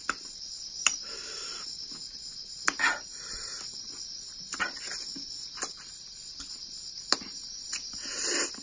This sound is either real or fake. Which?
real